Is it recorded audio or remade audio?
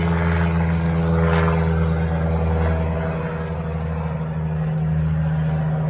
recorded